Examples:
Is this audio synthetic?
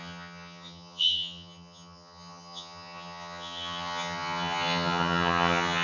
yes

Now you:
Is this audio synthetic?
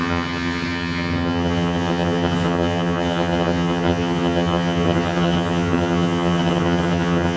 yes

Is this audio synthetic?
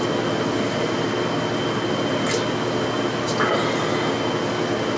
no